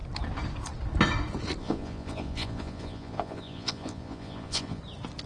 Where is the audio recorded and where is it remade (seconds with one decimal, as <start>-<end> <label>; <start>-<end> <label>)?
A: 0.0-1.6 recorded; 1.6-4.8 remade; 4.8-5.3 recorded